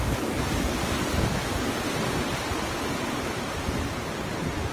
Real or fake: real